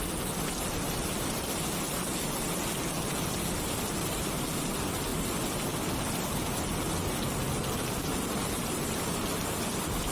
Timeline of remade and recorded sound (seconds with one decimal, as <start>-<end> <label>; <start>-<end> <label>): 0.0-10.1 recorded